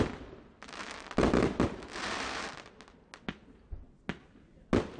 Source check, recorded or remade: recorded